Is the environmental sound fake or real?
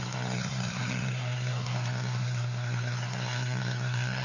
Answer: fake